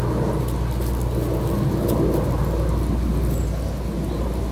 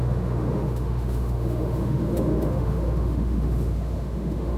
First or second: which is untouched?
first